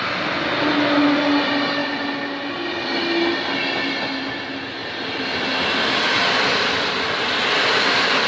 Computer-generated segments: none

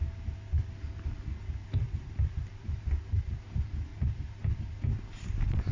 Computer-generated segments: 1.6-2.8 (vocoder, BigVGAN v2)

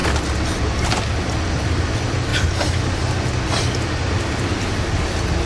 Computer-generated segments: none